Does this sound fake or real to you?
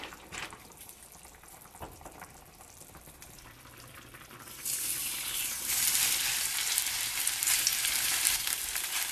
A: fake